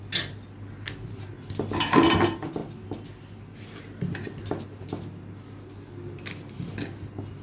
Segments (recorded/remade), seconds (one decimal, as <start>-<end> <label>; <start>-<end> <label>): 0.0-7.4 recorded